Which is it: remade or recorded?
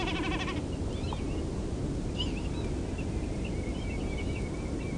recorded